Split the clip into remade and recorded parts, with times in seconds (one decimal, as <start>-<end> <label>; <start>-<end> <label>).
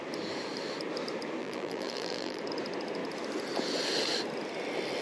0.0-1.4 recorded; 1.4-2.4 remade; 2.4-5.0 recorded